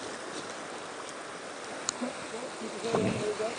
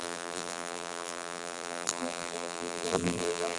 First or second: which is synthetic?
second